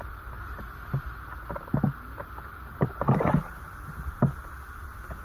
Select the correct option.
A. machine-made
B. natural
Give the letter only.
B